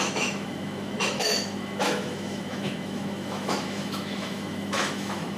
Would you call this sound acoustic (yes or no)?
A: no